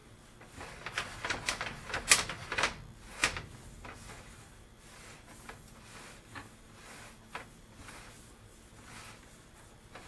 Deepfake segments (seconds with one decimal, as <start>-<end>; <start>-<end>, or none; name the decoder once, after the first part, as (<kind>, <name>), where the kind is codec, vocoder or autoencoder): none